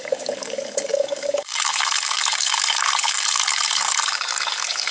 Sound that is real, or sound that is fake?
fake